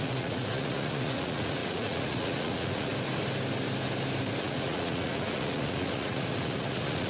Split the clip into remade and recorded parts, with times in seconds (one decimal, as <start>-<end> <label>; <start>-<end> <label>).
0.0-2.9 remade; 2.9-4.4 recorded; 4.4-7.1 remade